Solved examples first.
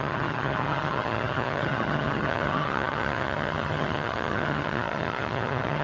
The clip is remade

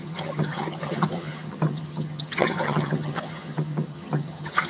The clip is remade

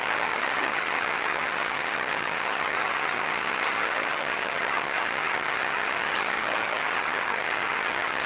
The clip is remade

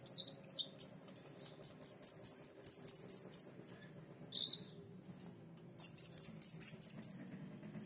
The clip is recorded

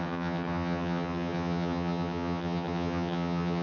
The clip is remade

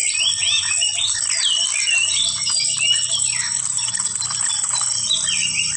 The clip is recorded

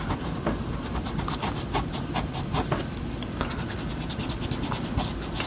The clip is recorded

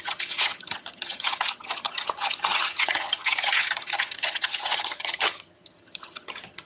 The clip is remade